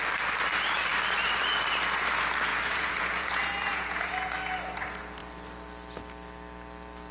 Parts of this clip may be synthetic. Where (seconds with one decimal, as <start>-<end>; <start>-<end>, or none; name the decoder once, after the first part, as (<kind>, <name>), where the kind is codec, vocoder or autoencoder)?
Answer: 2.5-4.1 (vocoder, Vocos)